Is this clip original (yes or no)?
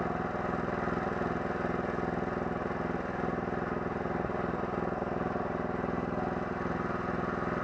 yes